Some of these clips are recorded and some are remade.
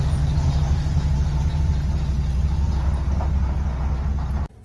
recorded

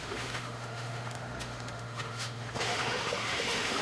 remade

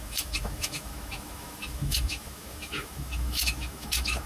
remade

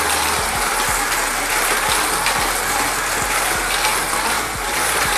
recorded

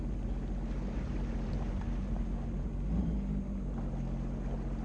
recorded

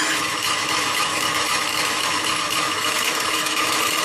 remade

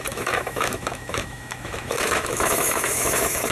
remade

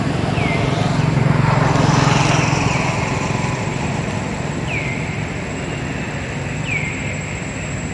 recorded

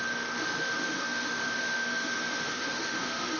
remade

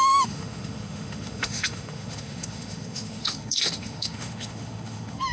remade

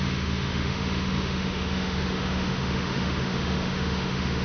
remade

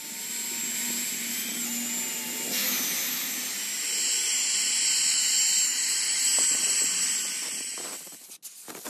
recorded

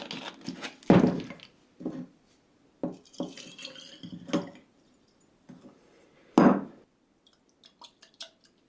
recorded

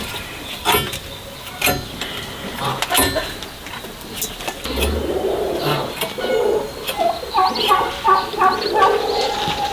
recorded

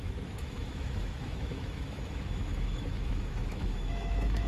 remade